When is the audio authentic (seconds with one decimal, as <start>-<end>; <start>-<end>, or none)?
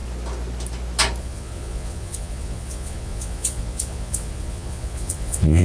0.0-1.2